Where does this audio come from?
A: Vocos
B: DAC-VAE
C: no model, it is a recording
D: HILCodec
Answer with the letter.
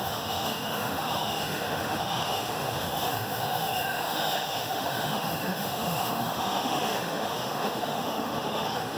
B